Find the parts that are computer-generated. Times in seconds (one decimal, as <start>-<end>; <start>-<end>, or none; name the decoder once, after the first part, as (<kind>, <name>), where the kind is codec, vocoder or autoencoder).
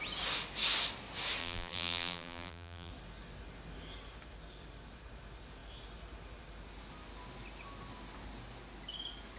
1.4-2.9 (vocoder, BigVGAN v2)